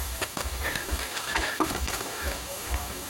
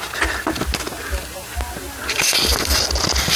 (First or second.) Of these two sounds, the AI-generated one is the first